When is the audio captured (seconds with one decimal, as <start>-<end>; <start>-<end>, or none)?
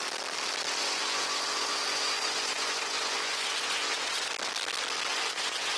0.0-0.8; 4.3-5.1